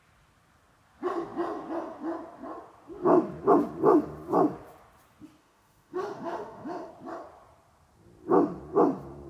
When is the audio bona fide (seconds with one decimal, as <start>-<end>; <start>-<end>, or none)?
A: 0.0-5.4; 6.9-9.3